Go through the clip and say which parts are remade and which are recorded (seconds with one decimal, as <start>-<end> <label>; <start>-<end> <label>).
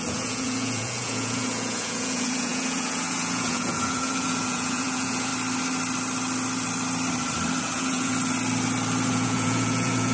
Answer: 0.0-5.3 remade; 5.3-7.6 recorded; 7.6-8.1 remade; 8.1-9.1 recorded; 9.1-10.1 remade